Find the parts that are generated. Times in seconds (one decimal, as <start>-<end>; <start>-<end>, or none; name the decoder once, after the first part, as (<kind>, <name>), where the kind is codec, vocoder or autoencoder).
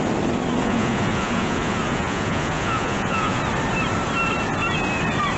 0.6-3.4 (vocoder, Vocos)